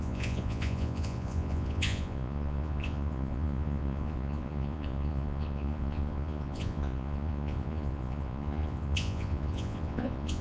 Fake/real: fake